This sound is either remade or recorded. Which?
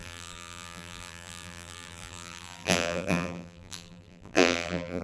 remade